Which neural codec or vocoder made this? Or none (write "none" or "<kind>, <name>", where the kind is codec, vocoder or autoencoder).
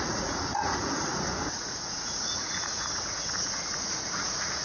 vocoder, Vocos